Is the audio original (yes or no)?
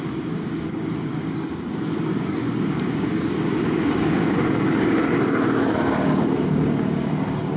no